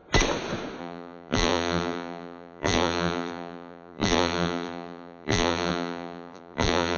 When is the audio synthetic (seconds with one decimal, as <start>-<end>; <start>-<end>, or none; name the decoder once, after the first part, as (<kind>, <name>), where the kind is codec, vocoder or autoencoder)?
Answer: 0.8-7.0 (vocoder, BigVGAN v2)